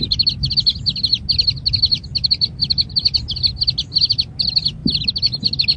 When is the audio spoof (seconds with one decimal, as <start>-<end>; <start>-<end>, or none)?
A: none